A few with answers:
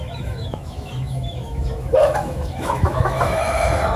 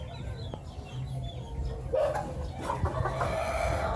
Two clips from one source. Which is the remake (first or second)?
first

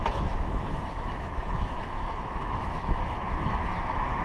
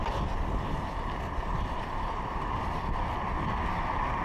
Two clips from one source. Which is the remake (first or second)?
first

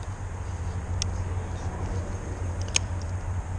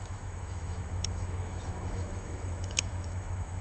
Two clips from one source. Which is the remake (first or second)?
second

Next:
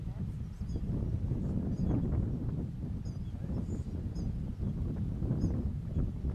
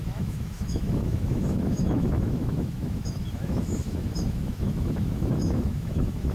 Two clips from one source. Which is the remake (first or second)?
second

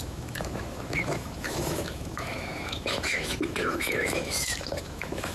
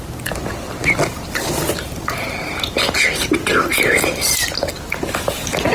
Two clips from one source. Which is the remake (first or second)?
first